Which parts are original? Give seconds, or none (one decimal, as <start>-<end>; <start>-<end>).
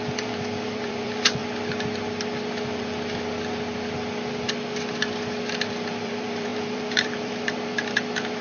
1.4-5.7